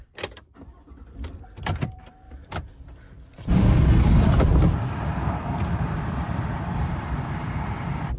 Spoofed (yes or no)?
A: yes